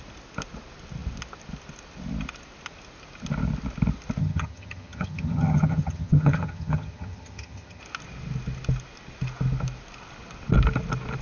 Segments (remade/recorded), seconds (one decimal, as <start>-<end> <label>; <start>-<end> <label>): 0.0-4.2 recorded; 4.2-7.8 remade; 7.8-11.2 recorded